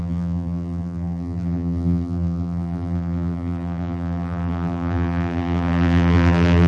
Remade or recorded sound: remade